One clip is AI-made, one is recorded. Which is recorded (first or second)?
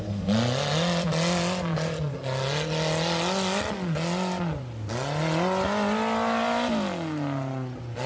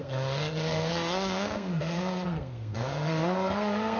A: first